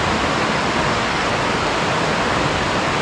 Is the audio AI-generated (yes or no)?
no